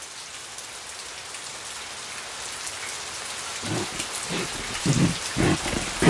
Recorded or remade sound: recorded